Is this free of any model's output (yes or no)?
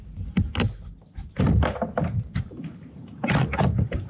yes